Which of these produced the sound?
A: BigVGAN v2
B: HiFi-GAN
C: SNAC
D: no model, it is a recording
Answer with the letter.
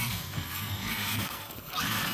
C